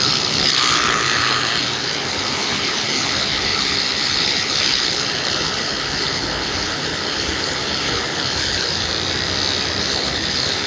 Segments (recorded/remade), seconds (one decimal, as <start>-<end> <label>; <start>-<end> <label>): 0.0-8.9 remade; 8.9-9.8 recorded; 9.8-10.7 remade

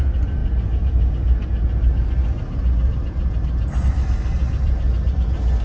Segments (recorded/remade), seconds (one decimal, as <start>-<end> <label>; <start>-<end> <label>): 0.0-5.6 recorded

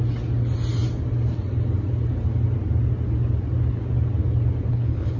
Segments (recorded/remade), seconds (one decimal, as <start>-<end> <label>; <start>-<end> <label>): 0.0-4.7 recorded; 4.7-5.2 remade

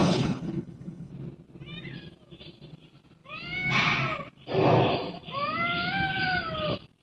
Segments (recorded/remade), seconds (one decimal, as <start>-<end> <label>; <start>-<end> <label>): 0.0-1.1 remade; 1.1-7.0 recorded

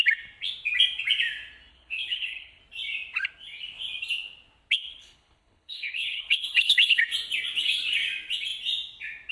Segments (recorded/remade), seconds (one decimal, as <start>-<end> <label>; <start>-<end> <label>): 0.0-1.7 recorded; 1.7-2.6 remade; 2.6-4.9 recorded; 4.9-7.0 remade; 7.0-9.3 recorded

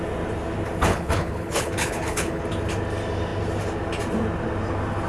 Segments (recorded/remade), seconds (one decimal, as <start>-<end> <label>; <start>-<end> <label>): 0.0-0.9 recorded; 0.9-2.4 remade; 2.4-5.1 recorded

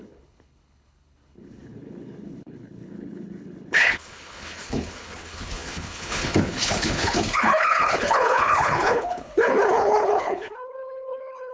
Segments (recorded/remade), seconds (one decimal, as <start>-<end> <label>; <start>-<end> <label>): 0.0-11.5 remade

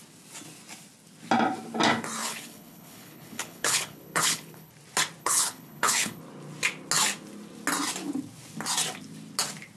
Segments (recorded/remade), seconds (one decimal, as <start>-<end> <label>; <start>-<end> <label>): 0.0-2.2 recorded; 2.2-4.7 remade; 4.7-5.2 recorded; 5.2-6.2 remade; 6.2-9.8 recorded